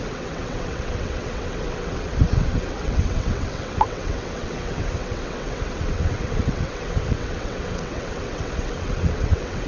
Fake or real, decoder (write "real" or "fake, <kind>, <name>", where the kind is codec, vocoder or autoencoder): fake, vocoder, WaveNeXt